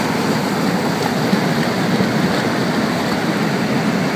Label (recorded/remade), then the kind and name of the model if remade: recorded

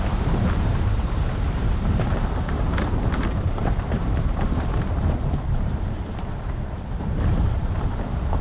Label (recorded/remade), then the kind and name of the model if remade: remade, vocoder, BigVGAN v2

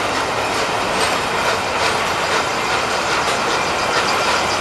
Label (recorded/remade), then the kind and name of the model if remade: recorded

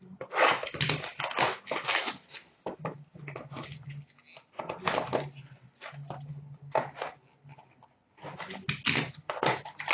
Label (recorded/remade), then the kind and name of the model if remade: recorded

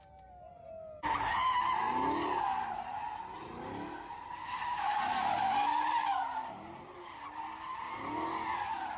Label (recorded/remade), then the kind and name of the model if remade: recorded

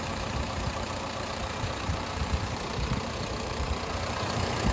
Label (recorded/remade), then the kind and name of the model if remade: remade, vocoder, BigVGAN v2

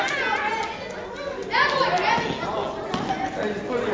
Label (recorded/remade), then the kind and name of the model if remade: recorded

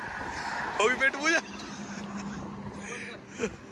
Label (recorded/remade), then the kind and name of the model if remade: recorded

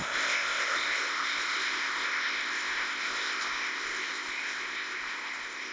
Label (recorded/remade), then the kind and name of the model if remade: remade, codec, ZipCodec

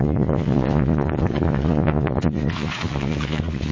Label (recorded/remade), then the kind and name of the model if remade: remade, vocoder, Vocos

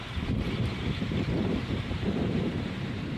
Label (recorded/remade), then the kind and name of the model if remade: remade, vocoder, BigVGAN v2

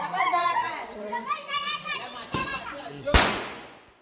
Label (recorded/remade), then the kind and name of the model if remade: remade, vocoder, Vocos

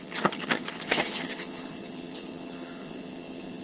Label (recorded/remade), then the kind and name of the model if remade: remade, vocoder, HiFi-GAN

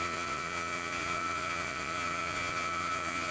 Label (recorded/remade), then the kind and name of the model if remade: remade, vocoder, Vocos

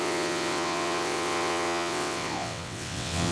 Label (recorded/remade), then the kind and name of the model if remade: remade, vocoder, WaveNeXt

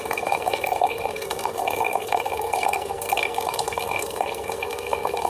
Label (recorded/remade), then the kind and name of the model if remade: remade, codec, SNAC